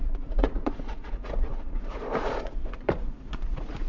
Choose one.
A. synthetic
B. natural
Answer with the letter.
A